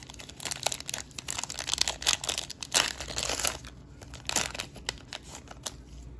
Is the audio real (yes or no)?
yes